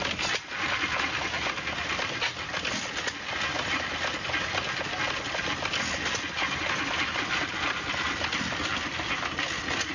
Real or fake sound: real